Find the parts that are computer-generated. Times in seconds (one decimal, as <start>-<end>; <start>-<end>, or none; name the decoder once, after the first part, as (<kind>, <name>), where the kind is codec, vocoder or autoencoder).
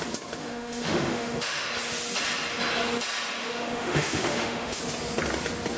0.4-1.7 (autoencoder, DAC-VAE); 3.4-4.8